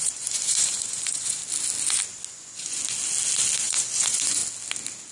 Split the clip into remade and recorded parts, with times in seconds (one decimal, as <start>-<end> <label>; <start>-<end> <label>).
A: 0.0-1.4 remade; 1.4-2.3 recorded; 2.3-2.8 remade; 2.8-3.6 recorded; 3.6-4.4 remade; 4.4-5.1 recorded